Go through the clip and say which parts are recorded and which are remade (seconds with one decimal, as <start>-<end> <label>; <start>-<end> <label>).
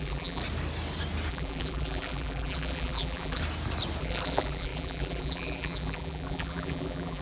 0.0-0.4 remade; 0.4-1.3 recorded; 1.3-3.4 remade; 3.4-4.0 recorded; 4.0-7.2 remade